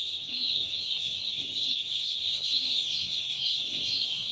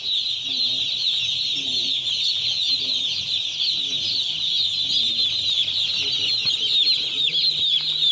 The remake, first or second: first